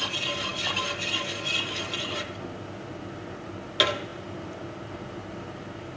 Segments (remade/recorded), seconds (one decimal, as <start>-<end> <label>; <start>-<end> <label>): 0.0-6.0 recorded